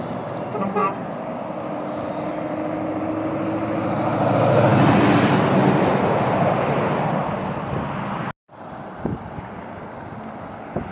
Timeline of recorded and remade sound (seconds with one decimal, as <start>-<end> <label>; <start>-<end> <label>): 0.0-7.2 recorded; 7.2-7.8 remade; 7.8-10.9 recorded